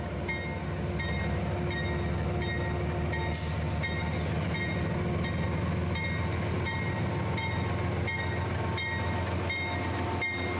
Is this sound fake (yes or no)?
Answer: no